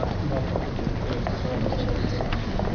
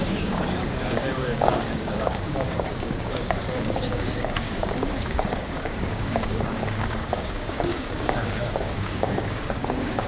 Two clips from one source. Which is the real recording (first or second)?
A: first